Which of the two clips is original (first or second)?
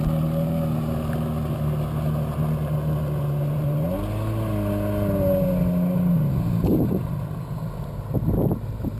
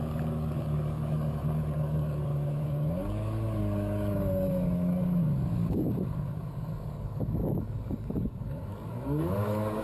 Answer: first